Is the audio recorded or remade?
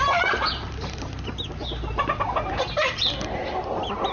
recorded